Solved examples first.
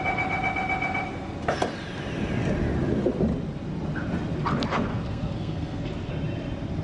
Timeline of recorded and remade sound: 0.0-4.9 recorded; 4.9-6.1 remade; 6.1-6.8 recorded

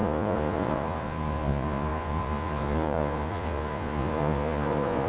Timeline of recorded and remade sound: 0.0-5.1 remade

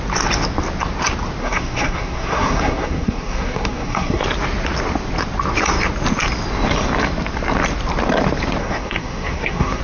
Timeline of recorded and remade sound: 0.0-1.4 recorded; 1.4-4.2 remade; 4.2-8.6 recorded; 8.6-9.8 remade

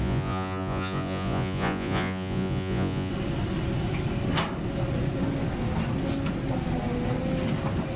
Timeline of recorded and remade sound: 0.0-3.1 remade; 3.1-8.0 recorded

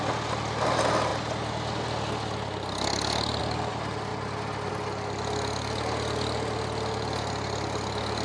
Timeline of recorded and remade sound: 0.0-8.2 recorded

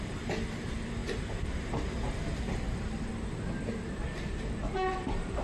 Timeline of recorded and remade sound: 0.0-3.1 remade; 3.1-3.7 recorded; 3.7-5.4 remade

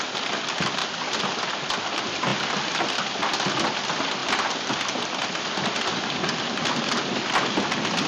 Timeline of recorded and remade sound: 0.0-8.1 recorded